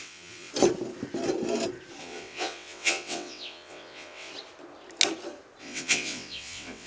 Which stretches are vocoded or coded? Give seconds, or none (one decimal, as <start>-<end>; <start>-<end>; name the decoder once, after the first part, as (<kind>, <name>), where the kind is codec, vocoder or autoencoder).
0.0-0.5 (vocoder, WaveNeXt); 2.0-4.3; 5.6-6.9